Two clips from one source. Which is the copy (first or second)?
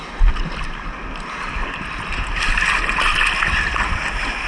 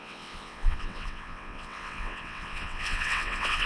second